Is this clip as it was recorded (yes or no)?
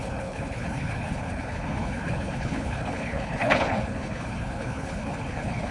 no